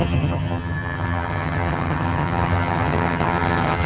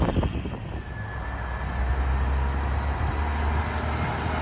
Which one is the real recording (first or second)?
second